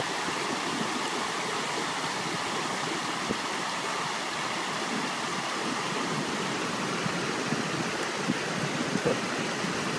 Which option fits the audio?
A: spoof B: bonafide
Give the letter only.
B